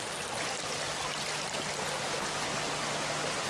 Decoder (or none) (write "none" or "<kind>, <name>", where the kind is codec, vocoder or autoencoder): none